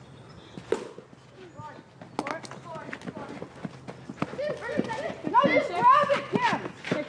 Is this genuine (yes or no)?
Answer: yes